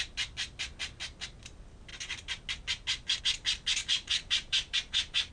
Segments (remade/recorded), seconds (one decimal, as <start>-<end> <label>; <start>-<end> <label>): 0.0-3.8 recorded; 3.8-5.3 remade